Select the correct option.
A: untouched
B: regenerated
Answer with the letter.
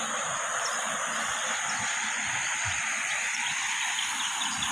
A